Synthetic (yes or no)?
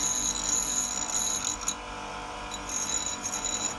no